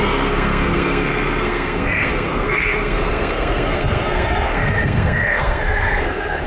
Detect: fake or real fake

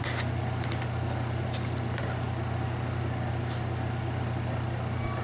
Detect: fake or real real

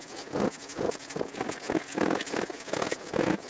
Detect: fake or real real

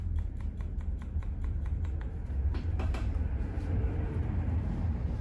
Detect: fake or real fake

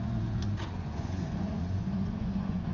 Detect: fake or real fake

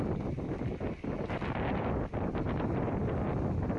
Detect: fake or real real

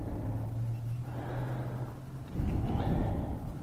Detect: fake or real real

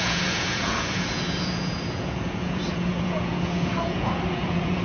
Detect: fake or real fake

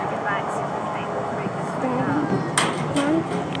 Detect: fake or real real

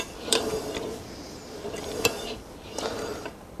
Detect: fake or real fake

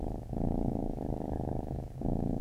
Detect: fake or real fake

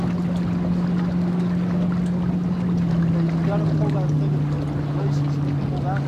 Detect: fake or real real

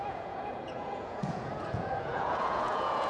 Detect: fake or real fake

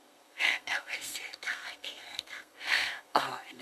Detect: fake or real fake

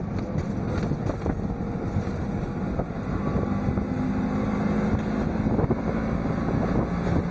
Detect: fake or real real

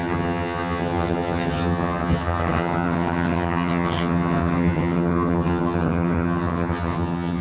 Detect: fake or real fake